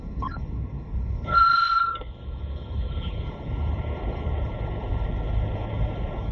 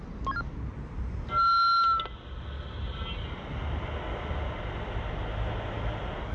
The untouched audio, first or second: second